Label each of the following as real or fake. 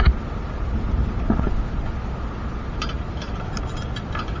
real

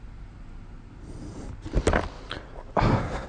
real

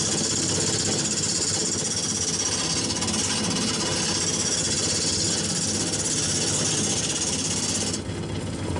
real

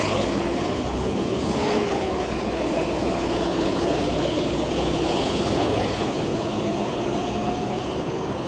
fake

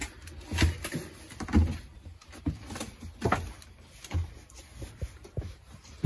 real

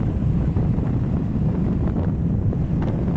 real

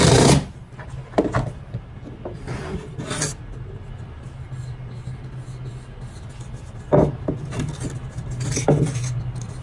real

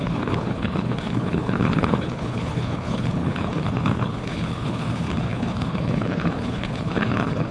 fake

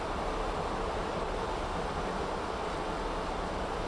real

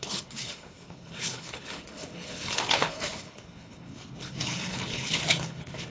fake